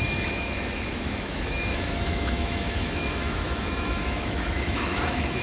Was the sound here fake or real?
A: fake